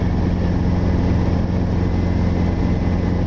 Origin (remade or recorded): recorded